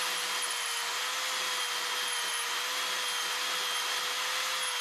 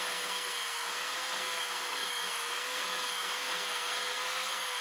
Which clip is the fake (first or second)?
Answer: second